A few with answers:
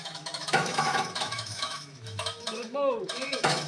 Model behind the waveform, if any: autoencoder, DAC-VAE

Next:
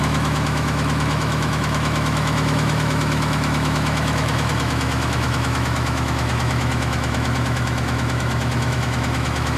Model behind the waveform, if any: autoencoder, DAC-VAE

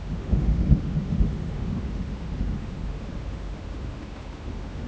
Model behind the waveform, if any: autoencoder, DAC-VAE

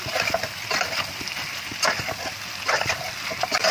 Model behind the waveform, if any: none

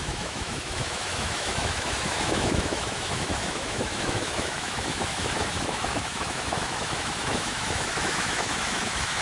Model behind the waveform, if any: autoencoder, DAC-VAE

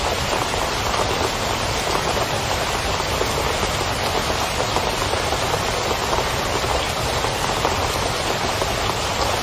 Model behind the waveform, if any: none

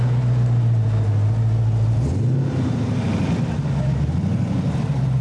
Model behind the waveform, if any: none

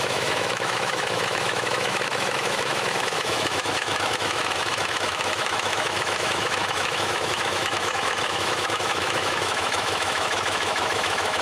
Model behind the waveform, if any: autoencoder, DAC-VAE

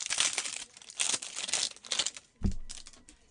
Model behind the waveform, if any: none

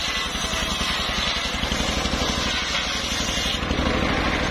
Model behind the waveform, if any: none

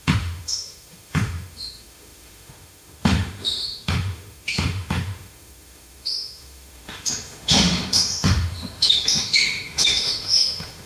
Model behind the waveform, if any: autoencoder, DAC-VAE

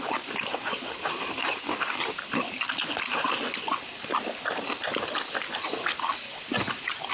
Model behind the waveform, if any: none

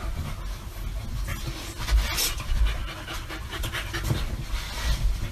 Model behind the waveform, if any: none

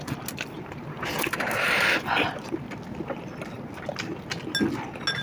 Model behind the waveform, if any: none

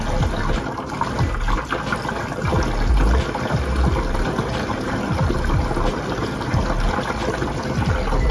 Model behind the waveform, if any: none